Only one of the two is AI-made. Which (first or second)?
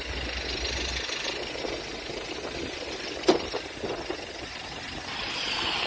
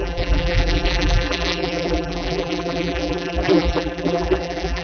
second